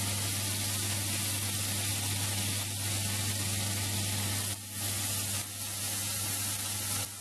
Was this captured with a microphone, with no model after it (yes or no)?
yes